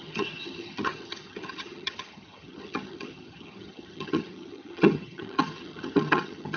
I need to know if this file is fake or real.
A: fake